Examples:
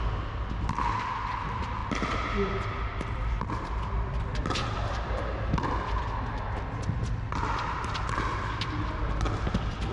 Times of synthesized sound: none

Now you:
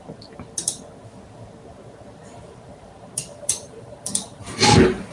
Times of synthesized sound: 2.2-4.4